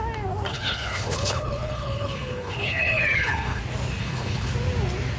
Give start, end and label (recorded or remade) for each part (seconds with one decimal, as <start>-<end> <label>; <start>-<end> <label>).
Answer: 0.0-0.5 recorded; 0.5-3.6 remade; 3.6-4.0 recorded; 4.0-4.5 remade; 4.5-5.2 recorded